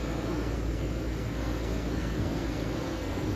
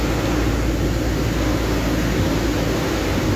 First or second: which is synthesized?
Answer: first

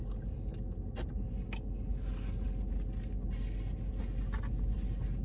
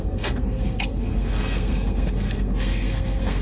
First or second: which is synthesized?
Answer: second